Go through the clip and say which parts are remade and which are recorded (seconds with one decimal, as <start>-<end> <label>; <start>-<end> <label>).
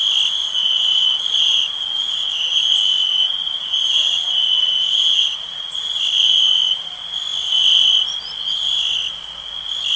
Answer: 0.0-0.4 recorded; 0.4-2.7 remade; 2.7-3.5 recorded; 3.5-6.0 remade; 6.0-10.0 recorded